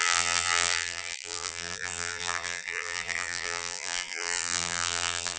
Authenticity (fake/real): fake